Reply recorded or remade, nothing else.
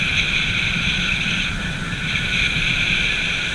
recorded